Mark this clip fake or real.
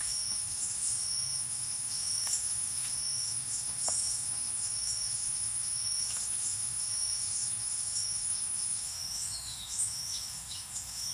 fake